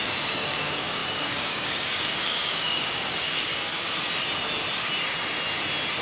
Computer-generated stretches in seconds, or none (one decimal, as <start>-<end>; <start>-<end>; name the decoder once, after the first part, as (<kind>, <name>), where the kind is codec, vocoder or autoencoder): 0.0-3.5 (codec, DAC)